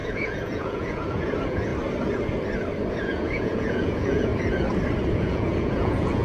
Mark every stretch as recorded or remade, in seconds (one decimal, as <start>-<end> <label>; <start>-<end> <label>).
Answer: 0.0-1.7 remade; 1.7-2.9 recorded; 2.9-4.3 remade; 4.3-5.1 recorded; 5.1-6.2 remade